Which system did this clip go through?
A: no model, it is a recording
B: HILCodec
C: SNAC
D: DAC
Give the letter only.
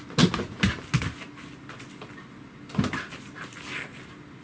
A